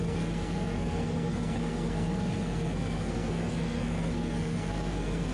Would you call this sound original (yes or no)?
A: no